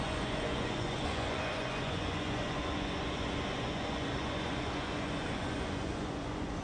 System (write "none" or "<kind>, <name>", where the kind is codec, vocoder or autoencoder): vocoder, Vocos